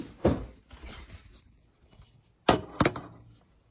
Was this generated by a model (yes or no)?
no